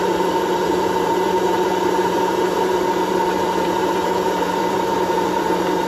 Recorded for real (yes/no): no